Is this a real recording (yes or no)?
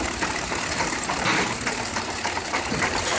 yes